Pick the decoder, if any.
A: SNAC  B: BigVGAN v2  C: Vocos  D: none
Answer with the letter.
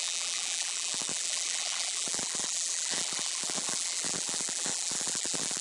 B